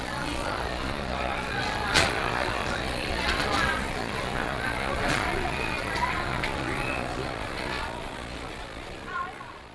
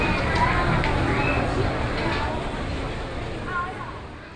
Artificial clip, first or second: first